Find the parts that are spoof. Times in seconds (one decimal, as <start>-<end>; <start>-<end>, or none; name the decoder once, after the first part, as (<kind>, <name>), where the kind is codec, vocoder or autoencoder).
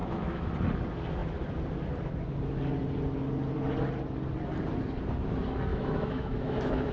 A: 0.0-0.5 (autoencoder, DAC-VAE); 5.7-6.9